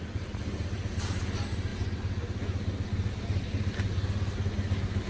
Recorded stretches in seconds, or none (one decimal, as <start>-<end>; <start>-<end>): 0.0-5.1